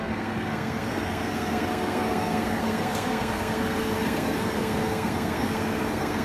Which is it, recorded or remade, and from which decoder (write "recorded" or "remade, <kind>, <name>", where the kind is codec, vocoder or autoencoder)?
remade, codec, SNAC